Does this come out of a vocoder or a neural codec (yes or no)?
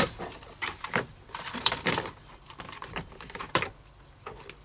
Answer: yes